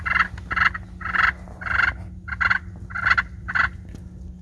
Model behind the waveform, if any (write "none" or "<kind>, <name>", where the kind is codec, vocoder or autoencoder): none